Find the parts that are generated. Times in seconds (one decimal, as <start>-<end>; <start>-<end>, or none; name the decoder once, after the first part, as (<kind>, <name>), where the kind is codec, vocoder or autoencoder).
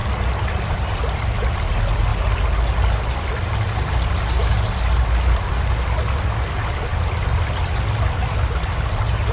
none